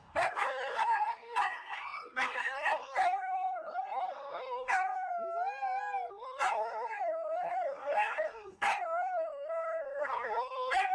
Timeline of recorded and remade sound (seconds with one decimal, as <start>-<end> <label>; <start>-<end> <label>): 0.0-5.1 remade; 5.1-6.1 recorded; 6.1-10.9 remade